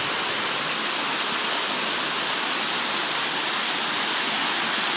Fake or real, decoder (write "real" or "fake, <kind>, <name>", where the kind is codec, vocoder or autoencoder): real